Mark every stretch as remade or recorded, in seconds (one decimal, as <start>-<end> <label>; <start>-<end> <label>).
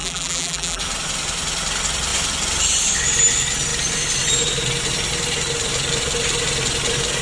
0.0-0.8 remade; 0.8-7.2 recorded